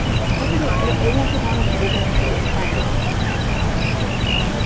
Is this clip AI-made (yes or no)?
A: no